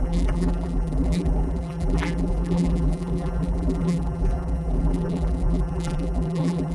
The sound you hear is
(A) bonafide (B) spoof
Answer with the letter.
B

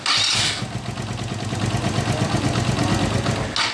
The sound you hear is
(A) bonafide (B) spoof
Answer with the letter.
A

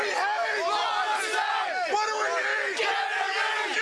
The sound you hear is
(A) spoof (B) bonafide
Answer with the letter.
B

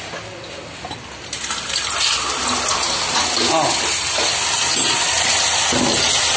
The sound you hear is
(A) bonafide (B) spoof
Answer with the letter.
A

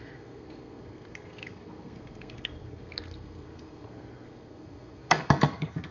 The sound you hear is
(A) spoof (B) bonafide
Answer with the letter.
A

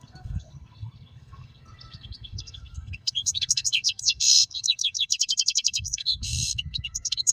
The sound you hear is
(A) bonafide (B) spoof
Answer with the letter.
B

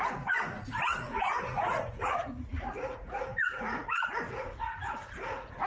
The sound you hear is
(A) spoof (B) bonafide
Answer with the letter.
A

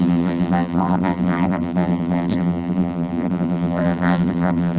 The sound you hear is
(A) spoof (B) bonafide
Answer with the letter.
A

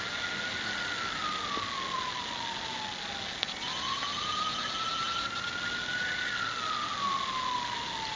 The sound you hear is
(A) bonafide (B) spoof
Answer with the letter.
A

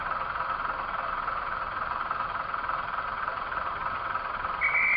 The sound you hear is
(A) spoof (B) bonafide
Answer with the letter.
B